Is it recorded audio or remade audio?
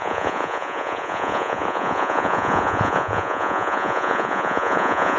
remade